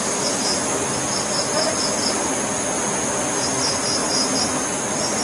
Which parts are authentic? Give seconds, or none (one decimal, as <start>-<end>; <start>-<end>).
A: 0.0-5.2